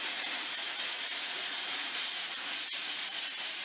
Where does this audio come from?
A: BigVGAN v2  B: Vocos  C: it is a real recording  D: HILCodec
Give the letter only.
B